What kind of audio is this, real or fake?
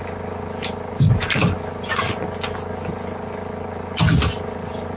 real